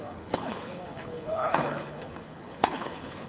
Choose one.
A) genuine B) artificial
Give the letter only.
B